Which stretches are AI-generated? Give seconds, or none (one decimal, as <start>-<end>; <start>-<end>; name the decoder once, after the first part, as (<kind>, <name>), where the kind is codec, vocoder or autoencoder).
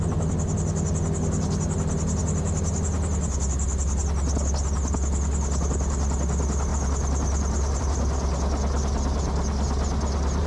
none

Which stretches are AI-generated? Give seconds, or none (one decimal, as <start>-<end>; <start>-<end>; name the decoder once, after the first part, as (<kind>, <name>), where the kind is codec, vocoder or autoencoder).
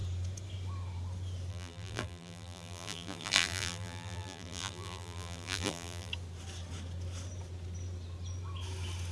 1.5-6.1 (vocoder, BigVGAN v2)